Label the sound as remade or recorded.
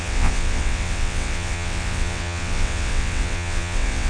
remade